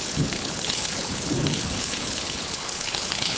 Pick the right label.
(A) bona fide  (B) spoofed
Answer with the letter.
B